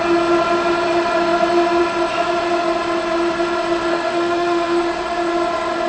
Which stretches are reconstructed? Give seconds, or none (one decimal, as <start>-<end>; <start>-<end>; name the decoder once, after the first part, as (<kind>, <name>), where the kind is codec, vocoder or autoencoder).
3.9-4.8 (autoencoder, DAC-VAE)

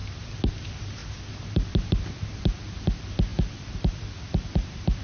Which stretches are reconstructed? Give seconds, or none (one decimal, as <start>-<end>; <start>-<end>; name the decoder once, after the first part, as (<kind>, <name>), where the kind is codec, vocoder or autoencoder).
none